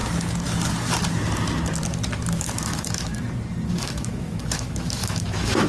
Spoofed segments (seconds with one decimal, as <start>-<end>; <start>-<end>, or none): 2.3-3.1; 3.7-5.7